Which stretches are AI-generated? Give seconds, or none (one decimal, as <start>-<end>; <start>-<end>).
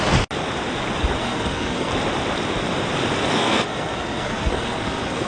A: 1.2-1.9; 3.3-5.3